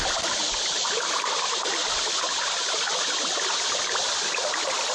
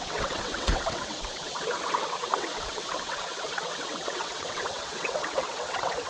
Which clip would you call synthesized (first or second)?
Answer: second